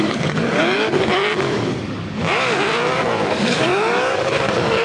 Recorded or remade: remade